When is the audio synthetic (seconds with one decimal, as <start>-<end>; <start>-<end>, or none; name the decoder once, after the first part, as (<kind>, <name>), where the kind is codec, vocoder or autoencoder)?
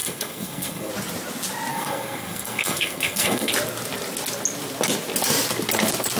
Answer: 0.0-0.9 (codec, SNAC); 1.7-3.5